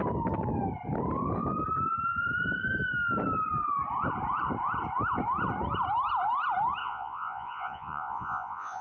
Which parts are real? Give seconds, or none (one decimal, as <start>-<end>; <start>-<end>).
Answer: 0.0-6.8